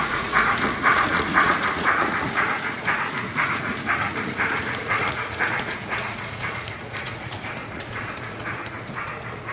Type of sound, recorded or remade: remade